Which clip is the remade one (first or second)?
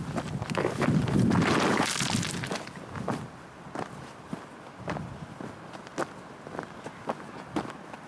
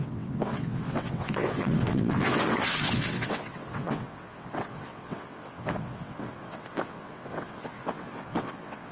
second